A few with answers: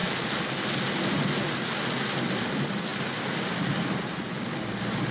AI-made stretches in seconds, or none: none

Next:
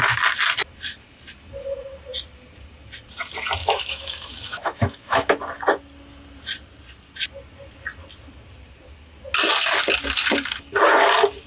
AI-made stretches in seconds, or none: 3.6-5.3

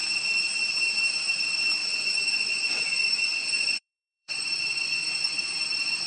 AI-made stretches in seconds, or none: 1.8-5.5

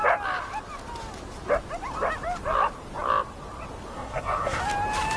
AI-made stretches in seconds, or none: 3.9-4.6

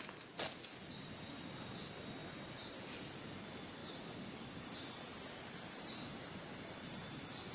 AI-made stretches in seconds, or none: none

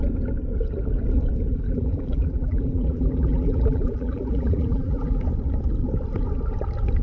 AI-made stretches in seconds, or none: 1.5-5.2

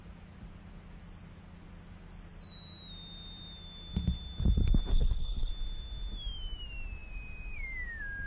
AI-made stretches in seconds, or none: 4.9-5.5

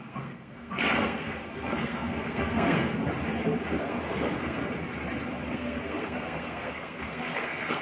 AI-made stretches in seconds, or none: 0.0-3.0; 3.8-4.6; 5.5-7.8